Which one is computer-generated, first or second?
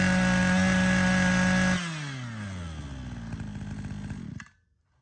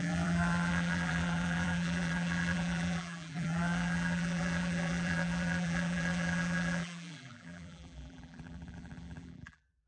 second